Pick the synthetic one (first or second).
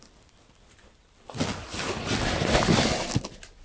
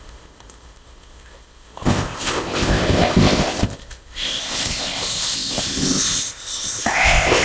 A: second